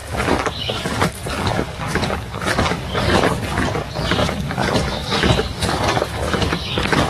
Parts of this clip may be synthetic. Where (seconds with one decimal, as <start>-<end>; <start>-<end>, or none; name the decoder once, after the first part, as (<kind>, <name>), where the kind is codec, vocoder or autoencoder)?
0.0-3.3 (codec, DAC); 4.2-7.1